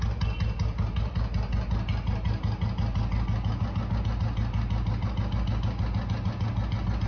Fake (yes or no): no